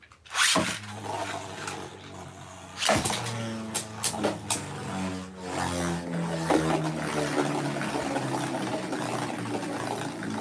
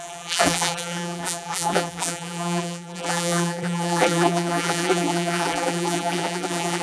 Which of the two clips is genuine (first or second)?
first